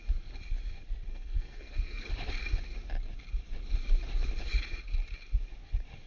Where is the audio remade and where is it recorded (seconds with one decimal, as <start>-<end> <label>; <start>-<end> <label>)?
0.0-1.1 recorded; 1.1-2.1 remade; 2.1-6.1 recorded